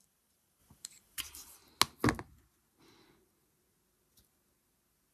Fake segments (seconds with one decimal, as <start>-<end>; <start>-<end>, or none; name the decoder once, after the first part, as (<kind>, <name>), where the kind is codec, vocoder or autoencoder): 0.0-1.6 (vocoder, BigVGAN v2)